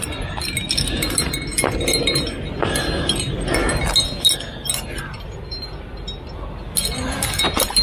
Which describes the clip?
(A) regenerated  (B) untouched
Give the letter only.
B